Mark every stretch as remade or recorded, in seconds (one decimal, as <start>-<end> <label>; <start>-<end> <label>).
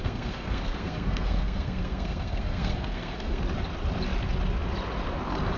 0.0-3.4 remade; 3.4-5.6 recorded